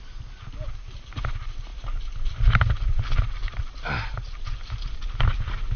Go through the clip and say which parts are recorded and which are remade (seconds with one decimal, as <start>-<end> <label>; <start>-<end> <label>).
0.0-5.8 recorded